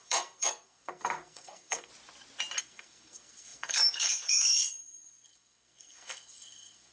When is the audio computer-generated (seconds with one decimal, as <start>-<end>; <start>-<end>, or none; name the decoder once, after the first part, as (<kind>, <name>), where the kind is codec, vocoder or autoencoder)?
0.0-1.9 (codec, SNAC); 2.6-6.9